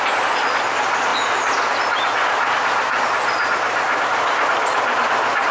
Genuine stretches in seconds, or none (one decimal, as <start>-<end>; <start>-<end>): 0.0-5.5